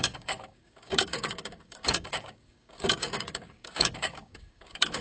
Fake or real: fake